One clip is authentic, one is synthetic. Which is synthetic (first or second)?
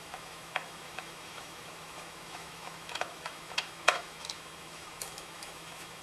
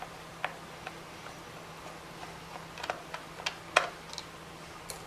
first